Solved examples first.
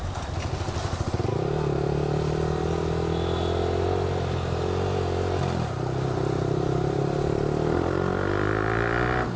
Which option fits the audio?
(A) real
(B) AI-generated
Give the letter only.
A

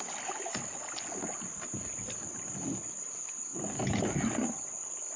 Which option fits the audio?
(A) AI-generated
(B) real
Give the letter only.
B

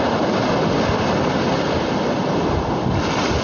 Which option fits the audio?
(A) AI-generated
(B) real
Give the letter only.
A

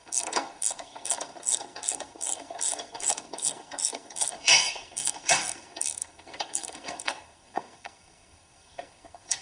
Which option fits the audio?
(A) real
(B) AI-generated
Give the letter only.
B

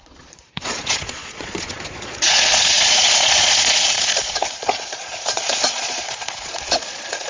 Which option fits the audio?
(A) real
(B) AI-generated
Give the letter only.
B